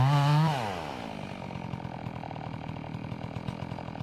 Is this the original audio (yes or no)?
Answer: yes